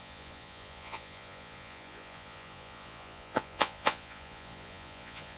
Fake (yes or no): yes